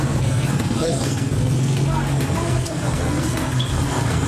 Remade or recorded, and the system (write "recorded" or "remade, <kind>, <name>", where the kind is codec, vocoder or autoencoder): remade, codec, SNAC